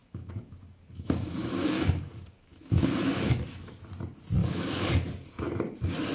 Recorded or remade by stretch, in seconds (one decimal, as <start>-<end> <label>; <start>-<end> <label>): 0.0-3.7 remade; 3.7-4.4 recorded; 4.4-4.9 remade; 4.9-6.1 recorded